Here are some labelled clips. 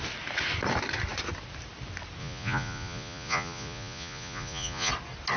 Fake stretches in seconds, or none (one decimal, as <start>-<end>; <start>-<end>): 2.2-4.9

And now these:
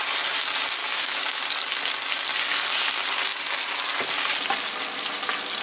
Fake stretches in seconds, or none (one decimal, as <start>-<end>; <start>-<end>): 0.8-1.4

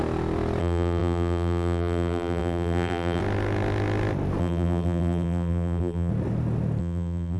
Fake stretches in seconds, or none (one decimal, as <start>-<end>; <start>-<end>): 0.6-3.2; 4.4-6.1; 6.8-7.4